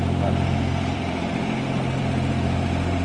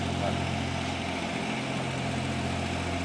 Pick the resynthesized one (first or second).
first